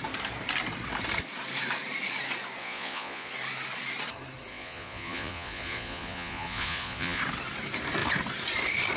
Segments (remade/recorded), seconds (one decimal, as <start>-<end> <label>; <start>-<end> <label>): 0.0-2.6 recorded; 2.6-3.3 remade; 3.3-4.5 recorded; 4.5-7.2 remade; 7.2-9.0 recorded